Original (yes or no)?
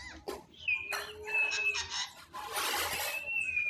yes